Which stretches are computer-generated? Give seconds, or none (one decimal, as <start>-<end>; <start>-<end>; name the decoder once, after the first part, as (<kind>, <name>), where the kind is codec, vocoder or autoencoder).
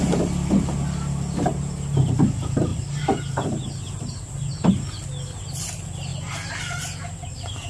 2.7-4.7 (vocoder, BigVGAN v2)